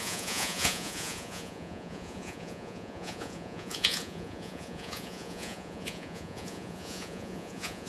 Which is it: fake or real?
fake